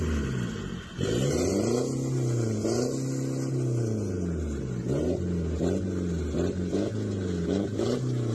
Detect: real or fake real